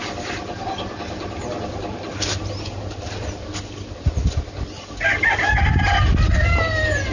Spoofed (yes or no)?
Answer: no